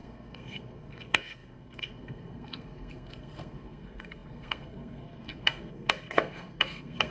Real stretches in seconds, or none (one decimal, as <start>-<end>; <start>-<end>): none